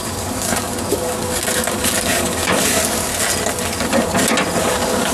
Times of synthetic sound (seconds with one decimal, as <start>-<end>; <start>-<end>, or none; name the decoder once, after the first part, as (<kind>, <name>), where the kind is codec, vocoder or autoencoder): 0.0-3.1 (codec, DAC); 3.6-4.1; 4.6-5.1